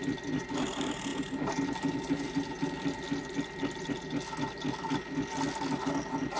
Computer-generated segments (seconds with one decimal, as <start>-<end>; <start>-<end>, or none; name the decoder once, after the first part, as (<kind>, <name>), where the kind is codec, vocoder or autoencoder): none

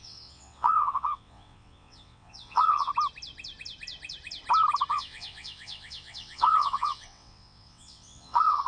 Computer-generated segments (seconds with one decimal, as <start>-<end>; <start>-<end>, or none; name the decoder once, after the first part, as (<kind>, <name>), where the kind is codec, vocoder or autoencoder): 0.0-2.9 (vocoder, WaveNeXt); 4.9-8.7

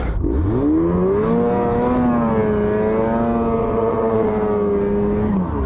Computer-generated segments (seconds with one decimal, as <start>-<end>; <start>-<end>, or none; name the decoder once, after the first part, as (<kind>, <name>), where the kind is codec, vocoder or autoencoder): 3.6-4.3 (vocoder, WaveNeXt)

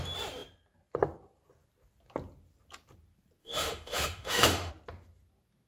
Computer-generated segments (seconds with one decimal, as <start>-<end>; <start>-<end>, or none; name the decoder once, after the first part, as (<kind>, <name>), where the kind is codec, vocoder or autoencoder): 3.4-4.7 (autoencoder, DAC-VAE)